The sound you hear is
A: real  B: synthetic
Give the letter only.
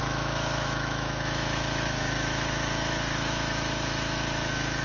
B